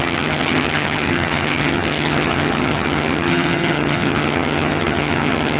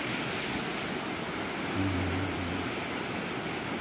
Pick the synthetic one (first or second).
first